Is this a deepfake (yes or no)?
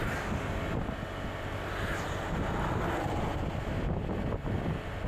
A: no